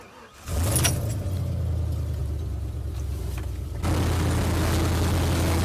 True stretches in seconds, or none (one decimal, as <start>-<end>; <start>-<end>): 0.0-2.2; 3.8-5.6